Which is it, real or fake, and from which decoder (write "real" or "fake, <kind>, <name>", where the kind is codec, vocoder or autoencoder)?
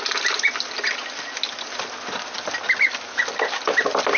real